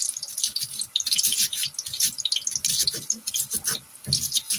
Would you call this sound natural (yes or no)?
yes